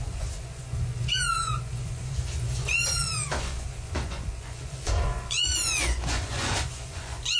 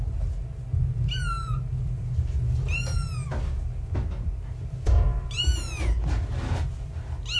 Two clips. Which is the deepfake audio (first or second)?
first